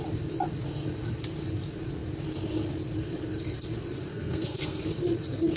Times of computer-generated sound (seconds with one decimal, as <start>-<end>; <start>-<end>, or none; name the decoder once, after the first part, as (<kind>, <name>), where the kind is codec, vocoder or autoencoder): 4.1-4.8 (codec, SNAC)